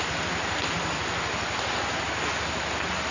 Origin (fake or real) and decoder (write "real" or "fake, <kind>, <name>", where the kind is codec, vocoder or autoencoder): real